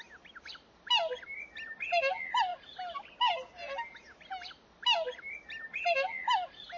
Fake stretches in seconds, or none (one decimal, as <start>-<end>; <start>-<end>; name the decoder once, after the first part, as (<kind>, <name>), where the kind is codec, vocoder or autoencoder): none